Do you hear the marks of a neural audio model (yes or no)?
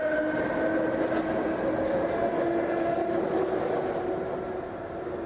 no